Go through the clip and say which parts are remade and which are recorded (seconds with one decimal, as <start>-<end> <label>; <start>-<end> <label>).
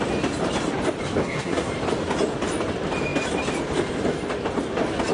0.0-1.2 recorded; 1.2-1.7 remade; 1.7-5.1 recorded